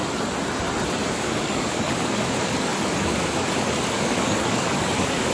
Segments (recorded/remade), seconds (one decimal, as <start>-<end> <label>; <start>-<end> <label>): 0.0-1.1 recorded; 1.1-5.3 remade